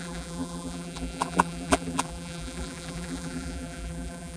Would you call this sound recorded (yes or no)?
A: no